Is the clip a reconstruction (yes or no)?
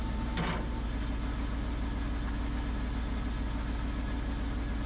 no